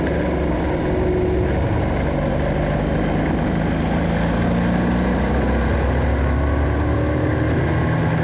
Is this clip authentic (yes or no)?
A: yes